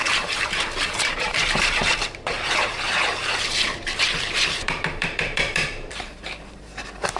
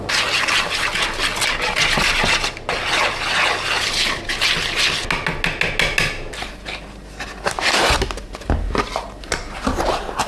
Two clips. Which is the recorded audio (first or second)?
second